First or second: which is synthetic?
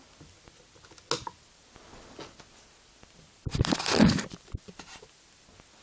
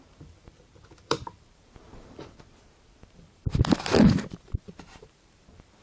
second